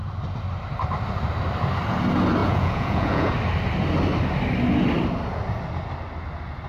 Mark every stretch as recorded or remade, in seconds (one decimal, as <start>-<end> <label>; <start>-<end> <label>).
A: 0.0-2.4 recorded; 2.4-3.3 remade; 3.3-6.7 recorded